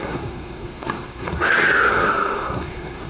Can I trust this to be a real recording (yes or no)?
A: no